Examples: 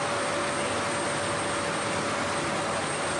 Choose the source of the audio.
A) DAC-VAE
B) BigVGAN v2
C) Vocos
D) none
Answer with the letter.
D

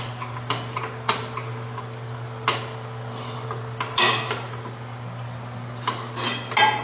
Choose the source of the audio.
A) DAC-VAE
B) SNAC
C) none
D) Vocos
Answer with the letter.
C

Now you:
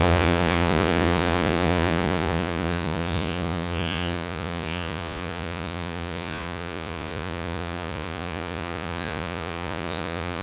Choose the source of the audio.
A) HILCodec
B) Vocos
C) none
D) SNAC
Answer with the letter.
B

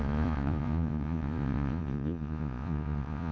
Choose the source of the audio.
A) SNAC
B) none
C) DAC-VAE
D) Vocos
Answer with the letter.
D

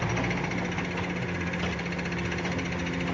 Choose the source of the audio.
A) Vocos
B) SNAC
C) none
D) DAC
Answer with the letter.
C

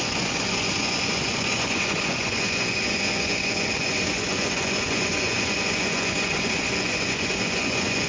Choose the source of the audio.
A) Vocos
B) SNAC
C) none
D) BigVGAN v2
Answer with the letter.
A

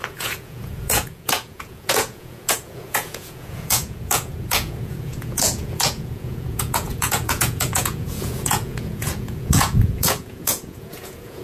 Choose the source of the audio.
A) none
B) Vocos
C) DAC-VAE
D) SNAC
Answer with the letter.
B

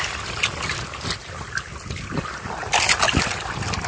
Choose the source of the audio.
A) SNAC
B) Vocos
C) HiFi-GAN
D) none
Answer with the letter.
D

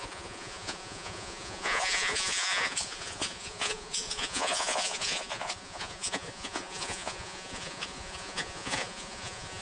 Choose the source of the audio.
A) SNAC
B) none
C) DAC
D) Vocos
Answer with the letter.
D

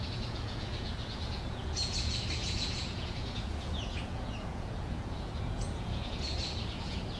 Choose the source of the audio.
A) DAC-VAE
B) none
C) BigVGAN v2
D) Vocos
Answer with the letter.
D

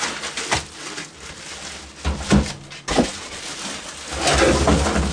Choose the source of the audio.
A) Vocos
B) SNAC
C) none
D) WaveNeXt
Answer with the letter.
C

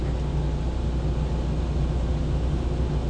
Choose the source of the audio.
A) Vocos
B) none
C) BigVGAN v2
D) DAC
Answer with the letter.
B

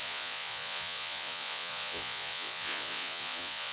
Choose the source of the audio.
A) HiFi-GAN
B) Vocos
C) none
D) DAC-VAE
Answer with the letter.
B